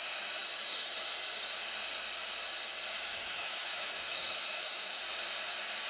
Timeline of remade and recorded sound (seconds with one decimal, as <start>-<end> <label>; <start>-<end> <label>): 0.0-3.1 recorded; 3.1-5.0 remade; 5.0-5.9 recorded